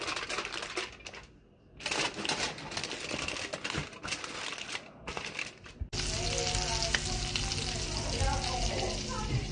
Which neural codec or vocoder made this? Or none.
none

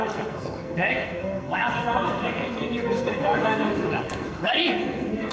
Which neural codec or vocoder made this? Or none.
codec, SNAC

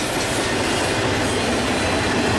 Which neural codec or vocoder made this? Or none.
none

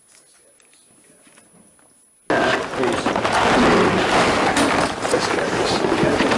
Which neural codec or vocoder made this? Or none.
none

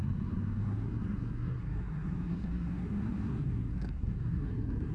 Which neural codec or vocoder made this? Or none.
codec, SNAC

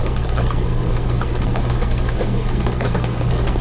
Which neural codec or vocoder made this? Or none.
codec, SNAC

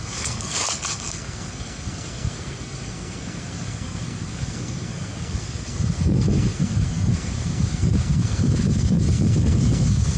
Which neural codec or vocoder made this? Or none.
codec, SNAC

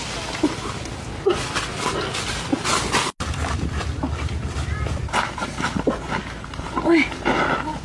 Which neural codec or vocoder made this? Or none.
none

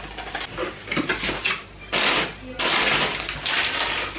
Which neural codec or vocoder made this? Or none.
none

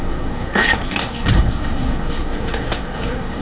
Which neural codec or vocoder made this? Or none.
codec, SNAC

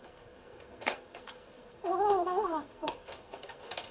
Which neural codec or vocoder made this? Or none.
codec, SNAC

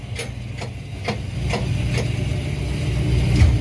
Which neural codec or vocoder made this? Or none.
none